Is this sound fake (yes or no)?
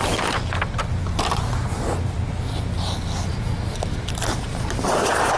no